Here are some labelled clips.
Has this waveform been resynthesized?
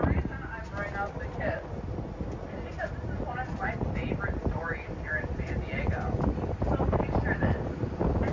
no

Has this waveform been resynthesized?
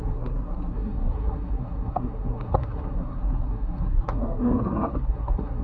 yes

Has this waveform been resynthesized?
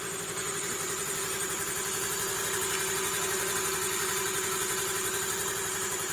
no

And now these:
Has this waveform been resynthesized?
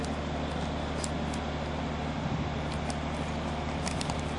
no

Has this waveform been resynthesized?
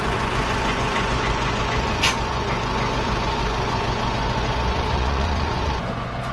yes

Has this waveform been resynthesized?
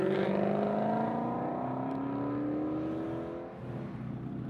no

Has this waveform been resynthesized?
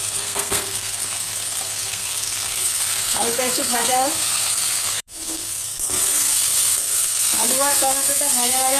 yes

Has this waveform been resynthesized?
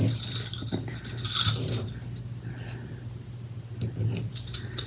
no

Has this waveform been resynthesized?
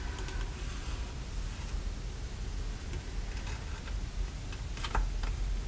no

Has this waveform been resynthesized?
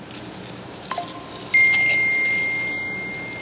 no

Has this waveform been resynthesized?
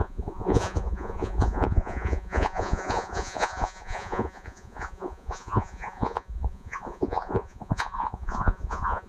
yes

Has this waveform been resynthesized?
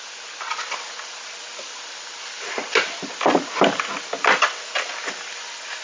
no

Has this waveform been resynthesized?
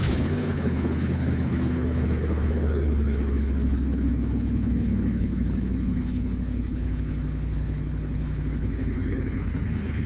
yes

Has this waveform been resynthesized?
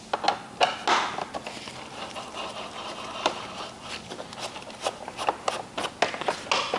no